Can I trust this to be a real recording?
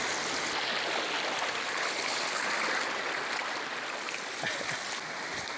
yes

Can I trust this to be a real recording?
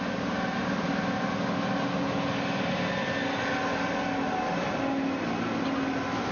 yes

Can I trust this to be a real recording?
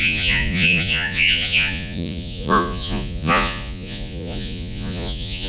no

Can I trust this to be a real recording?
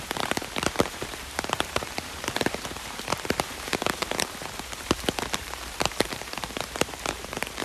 no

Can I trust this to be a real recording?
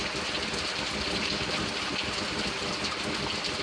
yes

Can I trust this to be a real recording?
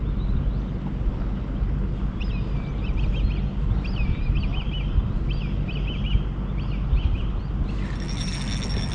yes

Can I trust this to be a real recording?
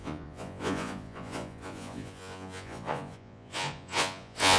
no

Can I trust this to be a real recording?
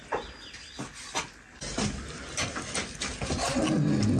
yes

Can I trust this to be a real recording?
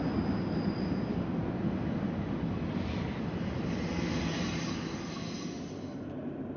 yes